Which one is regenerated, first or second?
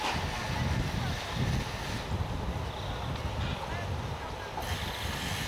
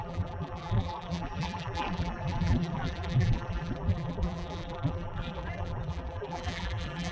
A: second